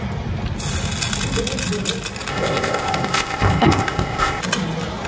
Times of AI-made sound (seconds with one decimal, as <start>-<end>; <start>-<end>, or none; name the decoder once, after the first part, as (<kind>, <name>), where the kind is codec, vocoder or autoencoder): 2.3-4.4 (codec, ZipCodec)